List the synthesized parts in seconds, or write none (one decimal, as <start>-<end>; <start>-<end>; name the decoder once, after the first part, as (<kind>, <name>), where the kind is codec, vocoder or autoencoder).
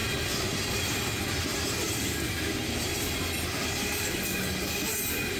none